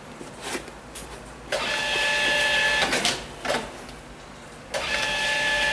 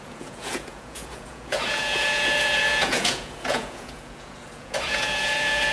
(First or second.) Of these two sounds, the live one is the first